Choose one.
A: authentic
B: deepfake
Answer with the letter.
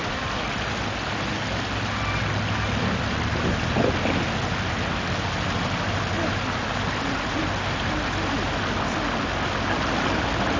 A